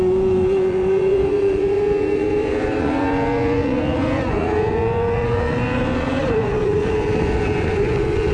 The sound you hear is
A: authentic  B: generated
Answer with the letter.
B